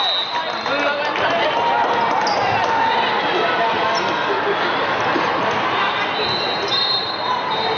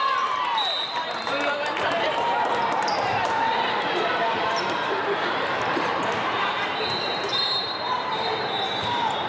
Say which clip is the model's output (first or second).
second